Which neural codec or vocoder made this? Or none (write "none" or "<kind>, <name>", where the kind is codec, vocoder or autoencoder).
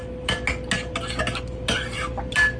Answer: none